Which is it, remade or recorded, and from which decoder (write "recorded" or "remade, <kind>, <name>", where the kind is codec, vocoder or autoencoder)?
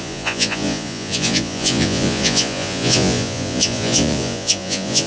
remade, vocoder, Vocos